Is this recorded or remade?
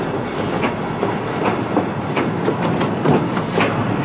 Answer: recorded